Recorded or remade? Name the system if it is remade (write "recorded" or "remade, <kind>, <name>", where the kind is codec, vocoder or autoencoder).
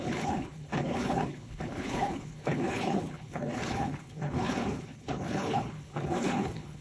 remade, codec, HILCodec